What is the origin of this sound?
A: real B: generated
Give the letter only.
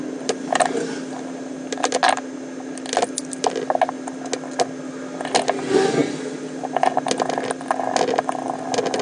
A